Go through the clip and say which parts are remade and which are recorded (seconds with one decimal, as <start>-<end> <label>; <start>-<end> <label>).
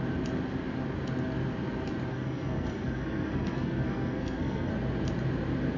0.0-2.1 recorded; 2.1-4.7 remade; 4.7-5.8 recorded